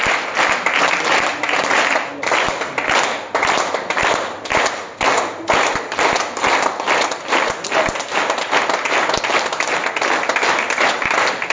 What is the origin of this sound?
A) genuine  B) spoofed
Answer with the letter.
A